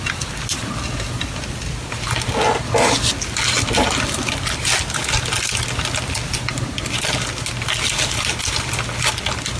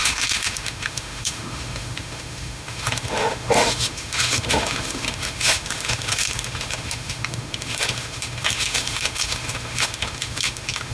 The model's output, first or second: second